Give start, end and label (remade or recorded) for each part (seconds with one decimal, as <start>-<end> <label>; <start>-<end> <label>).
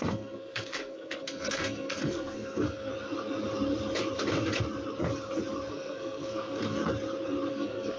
0.0-2.9 remade; 2.9-5.7 recorded; 5.7-6.8 remade; 6.8-7.5 recorded; 7.5-8.0 remade